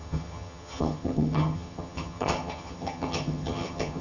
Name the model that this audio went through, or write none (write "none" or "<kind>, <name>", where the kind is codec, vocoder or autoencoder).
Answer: vocoder, HiFi-GAN